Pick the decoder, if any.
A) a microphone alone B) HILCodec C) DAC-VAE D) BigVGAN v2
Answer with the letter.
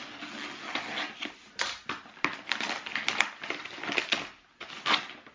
A